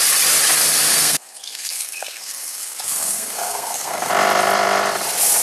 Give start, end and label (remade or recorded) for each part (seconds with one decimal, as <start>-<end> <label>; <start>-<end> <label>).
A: 0.0-0.9 recorded; 0.9-4.1 remade; 4.1-5.4 recorded